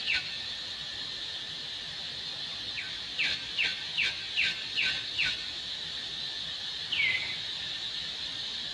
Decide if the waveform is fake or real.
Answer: real